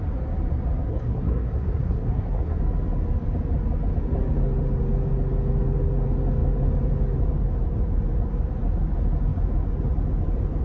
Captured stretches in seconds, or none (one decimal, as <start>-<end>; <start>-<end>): 0.0-0.9; 2.6-10.6